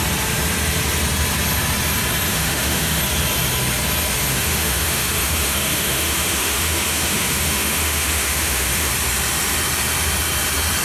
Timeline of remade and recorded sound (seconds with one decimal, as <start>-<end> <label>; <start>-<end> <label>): 0.0-2.3 recorded; 2.3-3.0 remade; 3.0-4.3 recorded; 4.3-8.9 remade; 8.9-10.8 recorded